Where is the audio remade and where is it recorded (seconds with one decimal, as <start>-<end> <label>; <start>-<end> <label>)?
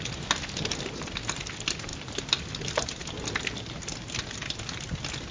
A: 0.0-5.3 recorded